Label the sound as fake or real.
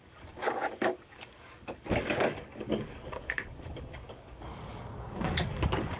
fake